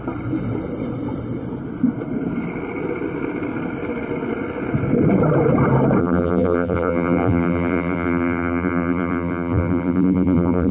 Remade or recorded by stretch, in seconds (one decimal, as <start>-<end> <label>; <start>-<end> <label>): 0.0-6.0 recorded; 6.0-10.7 remade